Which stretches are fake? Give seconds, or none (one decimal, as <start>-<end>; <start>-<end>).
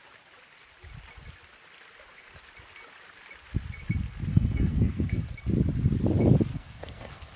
4.3-5.2; 6.5-7.4